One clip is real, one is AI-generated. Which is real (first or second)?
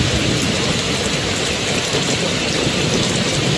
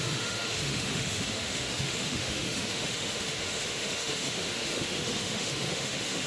first